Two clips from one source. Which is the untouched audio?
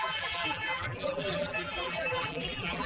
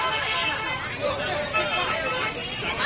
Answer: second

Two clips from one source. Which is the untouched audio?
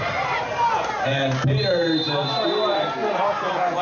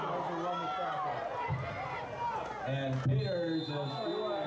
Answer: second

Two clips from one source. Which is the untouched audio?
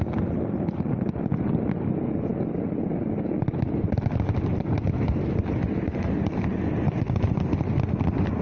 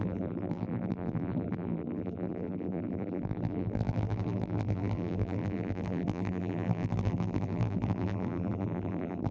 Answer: first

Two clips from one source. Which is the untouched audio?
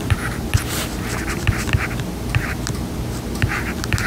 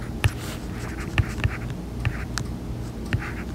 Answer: second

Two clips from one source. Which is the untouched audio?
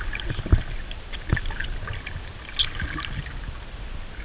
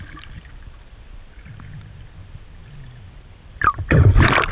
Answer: first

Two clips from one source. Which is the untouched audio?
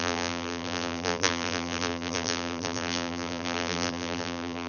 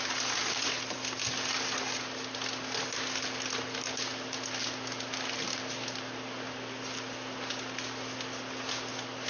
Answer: second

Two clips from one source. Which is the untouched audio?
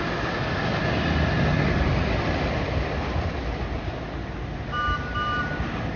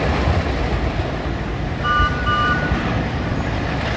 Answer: first